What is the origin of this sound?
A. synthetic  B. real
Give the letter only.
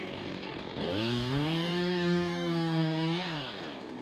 A